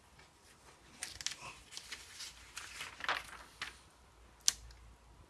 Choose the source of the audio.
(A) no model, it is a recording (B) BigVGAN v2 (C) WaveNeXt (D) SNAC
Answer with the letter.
A